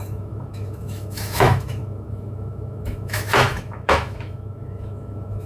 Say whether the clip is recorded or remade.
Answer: remade